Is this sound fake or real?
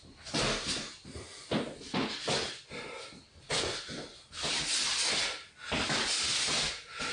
real